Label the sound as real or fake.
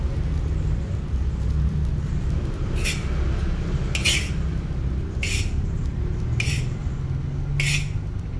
real